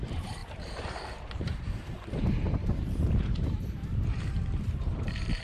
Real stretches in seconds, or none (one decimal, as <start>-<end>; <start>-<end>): none